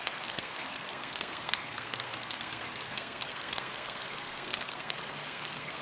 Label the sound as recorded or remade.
remade